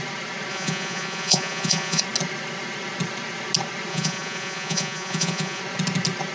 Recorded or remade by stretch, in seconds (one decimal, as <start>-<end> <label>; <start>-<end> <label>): 0.0-0.5 recorded; 0.5-2.0 remade; 2.0-3.9 recorded; 3.9-5.6 remade; 5.6-6.3 recorded